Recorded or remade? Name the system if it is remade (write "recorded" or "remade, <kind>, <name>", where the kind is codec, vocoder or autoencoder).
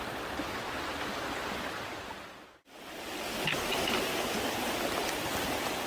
recorded